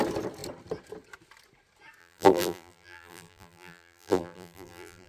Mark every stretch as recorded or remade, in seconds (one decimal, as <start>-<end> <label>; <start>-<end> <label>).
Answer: 0.0-2.0 recorded; 2.0-5.1 remade